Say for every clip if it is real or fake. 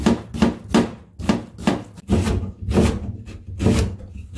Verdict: real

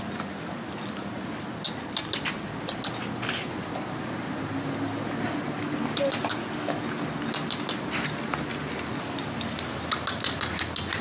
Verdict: real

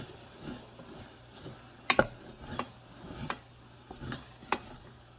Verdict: real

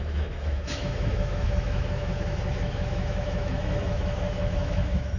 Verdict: fake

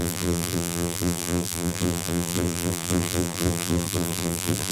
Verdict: fake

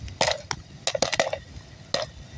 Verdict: real